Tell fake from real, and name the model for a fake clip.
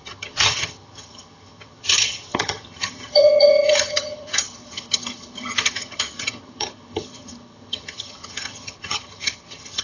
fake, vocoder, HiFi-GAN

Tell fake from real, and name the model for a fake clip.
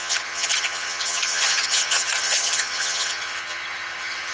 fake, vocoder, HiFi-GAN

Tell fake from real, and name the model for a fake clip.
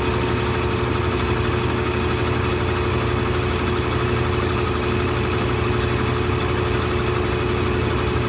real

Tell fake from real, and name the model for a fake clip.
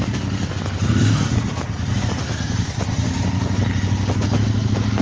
real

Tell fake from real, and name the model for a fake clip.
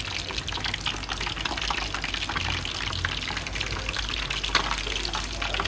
real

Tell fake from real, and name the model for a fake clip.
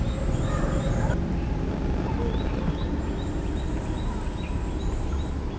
real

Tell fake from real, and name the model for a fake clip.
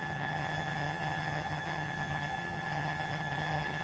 fake, vocoder, HiFi-GAN